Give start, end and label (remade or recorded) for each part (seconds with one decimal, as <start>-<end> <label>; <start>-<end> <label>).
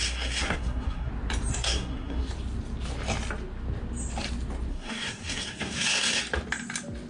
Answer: 0.0-1.1 remade; 1.1-1.5 recorded; 1.5-2.3 remade; 2.3-4.7 recorded; 4.7-6.2 remade; 6.2-7.1 recorded